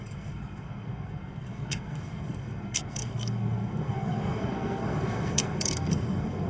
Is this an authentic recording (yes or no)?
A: no